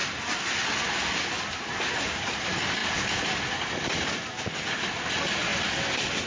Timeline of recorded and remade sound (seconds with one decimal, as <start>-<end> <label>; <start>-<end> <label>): 0.0-6.3 recorded